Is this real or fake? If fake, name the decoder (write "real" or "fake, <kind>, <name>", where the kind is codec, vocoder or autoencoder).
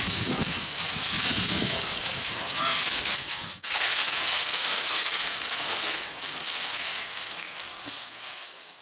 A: fake, codec, SNAC